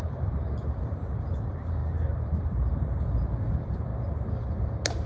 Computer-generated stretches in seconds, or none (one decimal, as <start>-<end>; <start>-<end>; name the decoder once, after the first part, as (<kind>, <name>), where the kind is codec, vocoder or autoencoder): 0.0-3.9 (vocoder, BigVGAN v2)